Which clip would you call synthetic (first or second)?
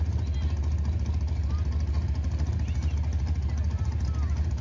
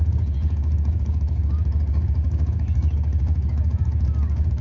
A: second